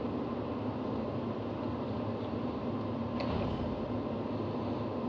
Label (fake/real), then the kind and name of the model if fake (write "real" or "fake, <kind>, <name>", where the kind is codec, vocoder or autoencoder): real